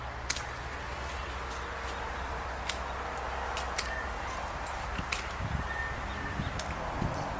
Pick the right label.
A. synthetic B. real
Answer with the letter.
B